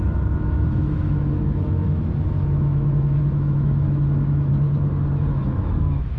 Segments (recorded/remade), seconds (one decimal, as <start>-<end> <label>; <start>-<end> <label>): 0.0-4.5 remade; 4.5-5.3 recorded; 5.3-6.2 remade

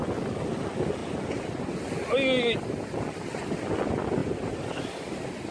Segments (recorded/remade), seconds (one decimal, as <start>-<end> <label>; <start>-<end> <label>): 0.0-5.5 recorded

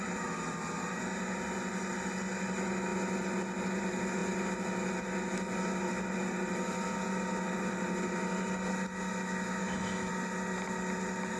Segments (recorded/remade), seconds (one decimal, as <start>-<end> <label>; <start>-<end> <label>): 0.0-9.6 recorded; 9.6-10.1 remade; 10.1-11.4 recorded

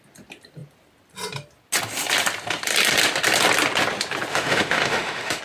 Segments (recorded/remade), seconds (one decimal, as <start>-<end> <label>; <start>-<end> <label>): 0.0-4.3 recorded; 4.3-5.4 remade